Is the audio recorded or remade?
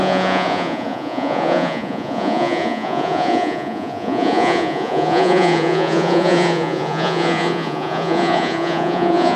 remade